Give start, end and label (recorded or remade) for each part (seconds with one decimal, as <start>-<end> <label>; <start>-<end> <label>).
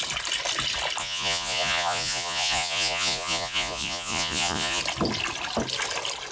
0.0-1.0 recorded; 1.0-4.8 remade; 4.8-6.3 recorded